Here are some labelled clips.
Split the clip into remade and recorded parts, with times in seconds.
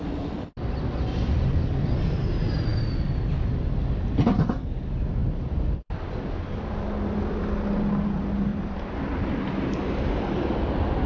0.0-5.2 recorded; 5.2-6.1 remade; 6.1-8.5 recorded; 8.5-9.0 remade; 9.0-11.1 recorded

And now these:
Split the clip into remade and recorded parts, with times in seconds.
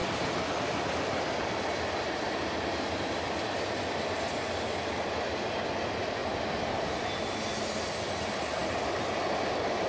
0.0-4.8 remade; 4.8-6.2 recorded; 6.2-6.7 remade; 6.7-9.9 recorded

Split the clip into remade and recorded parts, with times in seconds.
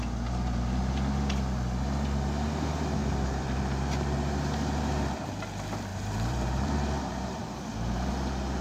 0.0-3.0 recorded; 3.0-3.6 remade; 3.6-5.9 recorded; 5.9-8.1 remade; 8.1-8.6 recorded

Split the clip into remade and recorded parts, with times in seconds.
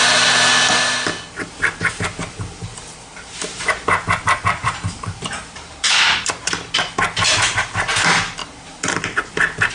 0.0-3.1 recorded; 3.1-6.4 remade; 6.4-9.7 recorded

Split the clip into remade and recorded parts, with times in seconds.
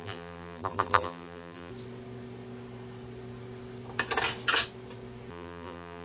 0.0-1.7 remade; 1.7-5.3 recorded; 5.3-6.0 remade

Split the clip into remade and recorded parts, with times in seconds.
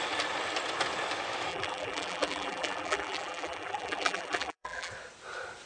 0.0-1.5 recorded; 1.5-4.9 remade; 4.9-5.7 recorded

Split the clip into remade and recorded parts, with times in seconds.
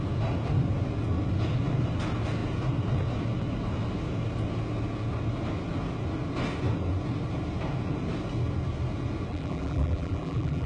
0.0-9.3 recorded; 9.3-10.7 remade